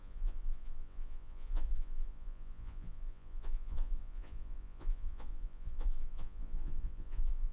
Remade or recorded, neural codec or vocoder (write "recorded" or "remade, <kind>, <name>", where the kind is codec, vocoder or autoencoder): remade, vocoder, Vocos